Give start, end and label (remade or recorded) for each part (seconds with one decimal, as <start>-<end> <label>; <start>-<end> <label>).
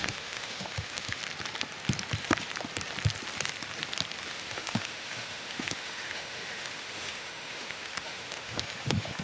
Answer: 0.0-1.2 remade; 1.2-4.3 recorded; 4.3-9.2 remade